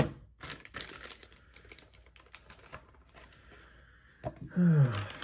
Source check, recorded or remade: recorded